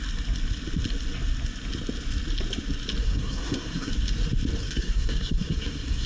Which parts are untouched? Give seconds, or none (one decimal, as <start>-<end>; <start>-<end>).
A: 0.0-3.0; 3.9-4.6

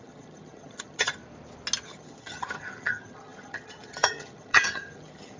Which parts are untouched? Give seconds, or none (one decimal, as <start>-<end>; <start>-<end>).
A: 1.2-1.8

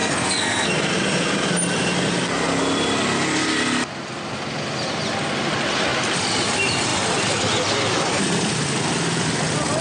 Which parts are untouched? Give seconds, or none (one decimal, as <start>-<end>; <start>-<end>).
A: 0.7-9.8

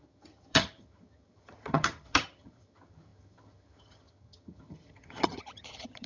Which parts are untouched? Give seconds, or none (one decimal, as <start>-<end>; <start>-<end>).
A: none

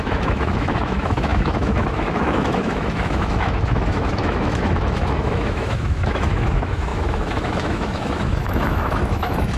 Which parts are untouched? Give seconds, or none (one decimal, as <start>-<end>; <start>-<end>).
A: none